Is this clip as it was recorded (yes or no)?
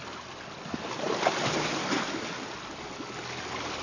yes